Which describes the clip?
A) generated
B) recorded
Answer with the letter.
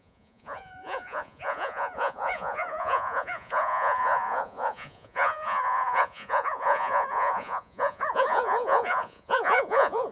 A